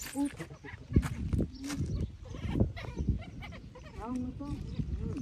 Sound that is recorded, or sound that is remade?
recorded